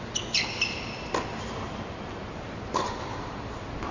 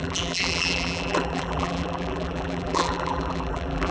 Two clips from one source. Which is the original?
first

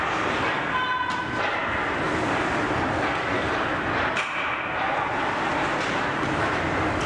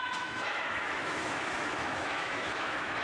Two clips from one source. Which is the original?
first